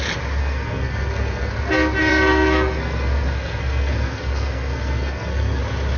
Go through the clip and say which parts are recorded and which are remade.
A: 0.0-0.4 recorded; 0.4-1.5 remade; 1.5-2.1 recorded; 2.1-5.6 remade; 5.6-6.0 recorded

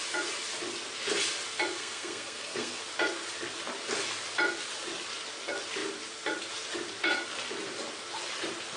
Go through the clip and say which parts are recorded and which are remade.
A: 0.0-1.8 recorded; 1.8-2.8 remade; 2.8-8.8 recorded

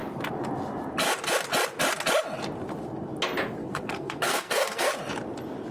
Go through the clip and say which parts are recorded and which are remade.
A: 0.0-3.6 recorded; 3.6-4.9 remade; 4.9-5.7 recorded